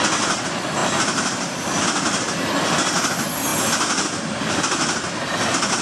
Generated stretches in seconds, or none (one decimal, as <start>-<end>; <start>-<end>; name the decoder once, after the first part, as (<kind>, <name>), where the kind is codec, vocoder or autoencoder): 0.8-1.8 (vocoder, BigVGAN v2)